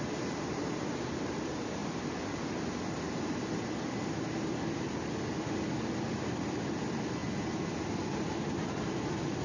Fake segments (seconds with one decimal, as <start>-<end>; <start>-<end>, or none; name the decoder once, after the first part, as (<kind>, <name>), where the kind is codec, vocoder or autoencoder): 0.0-1.8 (vocoder, BigVGAN v2); 6.2-7.2; 8.3-9.4